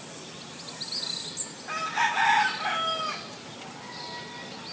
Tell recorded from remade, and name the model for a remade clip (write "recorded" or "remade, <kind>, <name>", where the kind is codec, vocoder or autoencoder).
recorded